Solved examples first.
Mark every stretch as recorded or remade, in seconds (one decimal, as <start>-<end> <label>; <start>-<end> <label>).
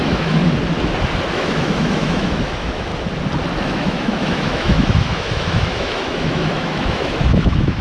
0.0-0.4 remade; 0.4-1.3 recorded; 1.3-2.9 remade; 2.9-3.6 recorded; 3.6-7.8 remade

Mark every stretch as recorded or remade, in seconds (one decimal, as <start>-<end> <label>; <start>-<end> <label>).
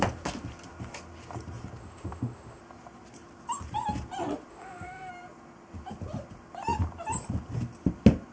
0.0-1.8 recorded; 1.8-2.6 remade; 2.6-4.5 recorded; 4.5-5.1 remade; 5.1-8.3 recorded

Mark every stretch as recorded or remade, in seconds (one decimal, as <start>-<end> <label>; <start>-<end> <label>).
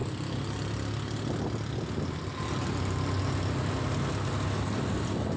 0.0-5.4 recorded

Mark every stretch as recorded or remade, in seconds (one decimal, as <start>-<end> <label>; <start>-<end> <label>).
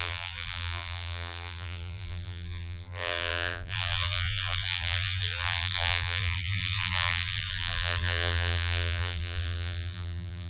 0.0-10.5 remade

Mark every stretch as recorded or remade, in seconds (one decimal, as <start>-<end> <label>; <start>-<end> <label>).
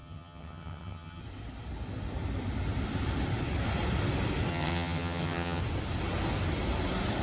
0.0-1.2 remade; 1.2-4.5 recorded; 4.5-5.6 remade; 5.6-7.2 recorded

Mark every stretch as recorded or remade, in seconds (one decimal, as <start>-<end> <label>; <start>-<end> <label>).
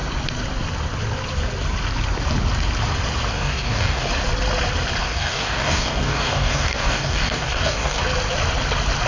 0.0-3.3 recorded; 3.3-4.1 remade; 4.1-5.0 recorded; 5.0-8.0 remade; 8.0-9.1 recorded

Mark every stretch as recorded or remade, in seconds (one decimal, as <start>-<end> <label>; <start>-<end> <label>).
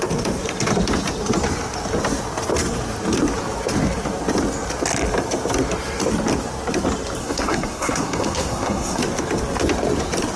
0.0-7.2 recorded; 7.2-9.0 remade; 9.0-10.4 recorded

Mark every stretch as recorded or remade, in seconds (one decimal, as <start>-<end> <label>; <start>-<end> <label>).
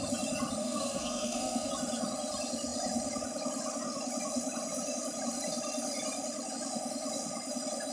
0.0-0.6 recorded; 0.6-1.7 remade; 1.7-7.9 recorded